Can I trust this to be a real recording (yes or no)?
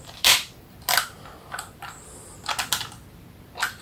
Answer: yes